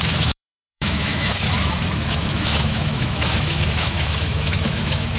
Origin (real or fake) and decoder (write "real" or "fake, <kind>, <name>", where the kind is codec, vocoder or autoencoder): fake, autoencoder, DAC-VAE